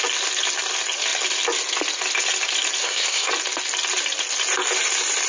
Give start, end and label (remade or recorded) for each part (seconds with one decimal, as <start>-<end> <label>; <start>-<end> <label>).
0.0-2.8 recorded; 2.8-3.3 remade; 3.3-5.3 recorded